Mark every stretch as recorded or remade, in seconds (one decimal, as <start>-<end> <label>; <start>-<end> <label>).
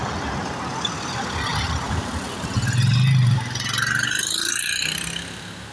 0.0-1.5 recorded; 1.5-2.5 remade; 2.5-5.7 recorded